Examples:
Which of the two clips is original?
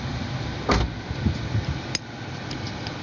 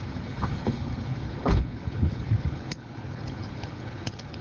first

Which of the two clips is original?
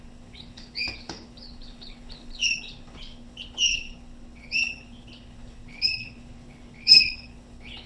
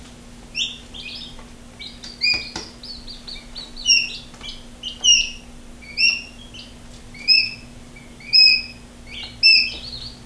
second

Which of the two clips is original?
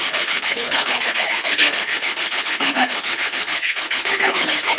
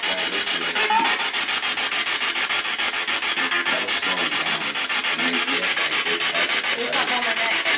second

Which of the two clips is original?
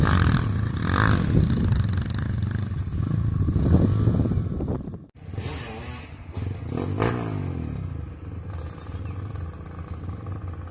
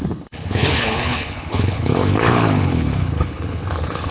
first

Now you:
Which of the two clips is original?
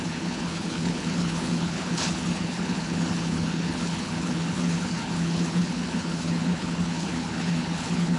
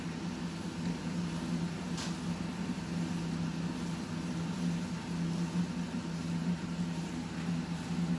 second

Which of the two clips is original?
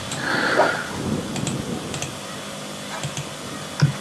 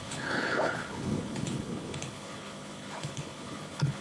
first